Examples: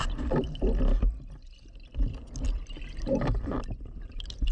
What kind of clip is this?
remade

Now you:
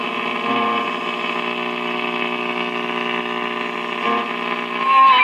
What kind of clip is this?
recorded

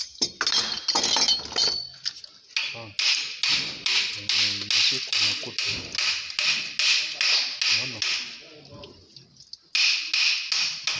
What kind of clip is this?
recorded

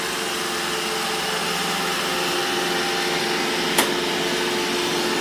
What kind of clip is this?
recorded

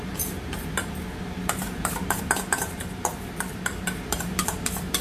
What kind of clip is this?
remade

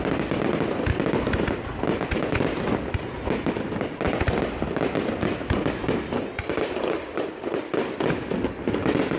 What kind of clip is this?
recorded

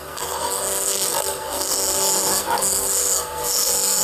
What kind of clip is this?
remade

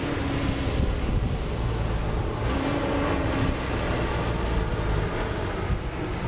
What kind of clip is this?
recorded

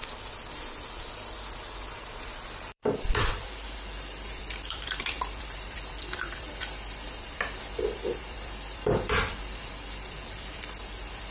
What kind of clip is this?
remade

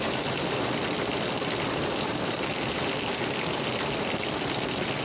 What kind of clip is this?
recorded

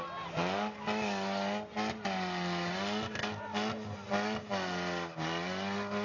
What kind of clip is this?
recorded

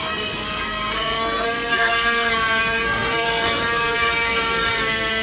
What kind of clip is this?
remade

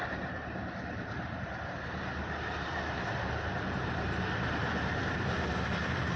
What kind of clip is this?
remade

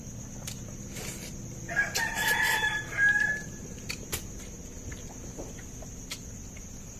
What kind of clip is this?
remade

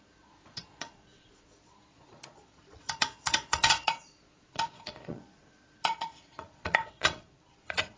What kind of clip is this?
remade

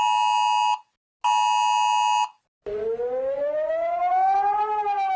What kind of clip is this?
recorded